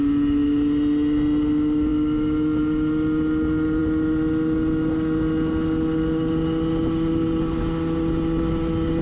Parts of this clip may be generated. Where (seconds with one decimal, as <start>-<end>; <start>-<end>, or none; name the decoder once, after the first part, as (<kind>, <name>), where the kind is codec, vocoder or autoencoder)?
none